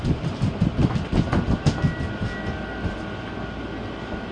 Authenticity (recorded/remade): recorded